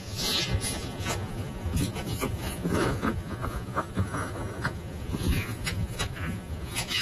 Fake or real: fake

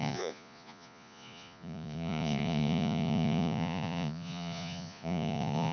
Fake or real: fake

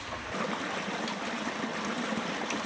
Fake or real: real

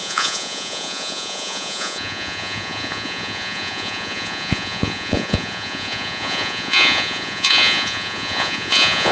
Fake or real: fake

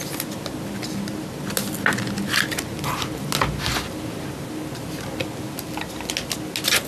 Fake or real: real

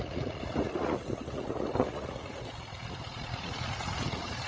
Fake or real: fake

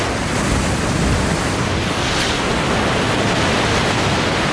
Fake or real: real